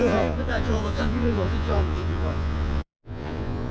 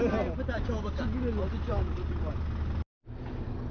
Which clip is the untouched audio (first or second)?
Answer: second